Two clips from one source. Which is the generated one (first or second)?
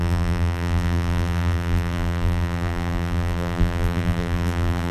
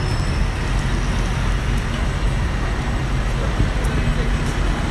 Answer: first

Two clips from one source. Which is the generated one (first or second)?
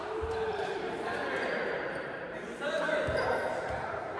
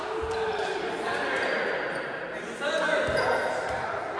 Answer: first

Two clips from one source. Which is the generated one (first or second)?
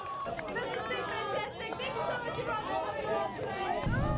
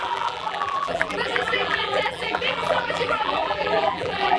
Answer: second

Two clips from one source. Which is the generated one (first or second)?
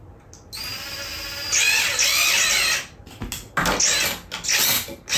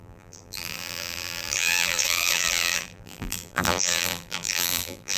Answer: second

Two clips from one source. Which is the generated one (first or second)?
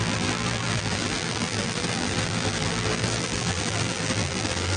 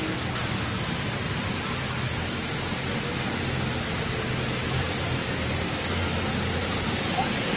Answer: first